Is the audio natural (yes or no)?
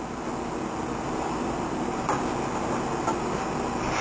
yes